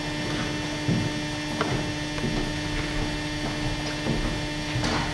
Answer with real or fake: real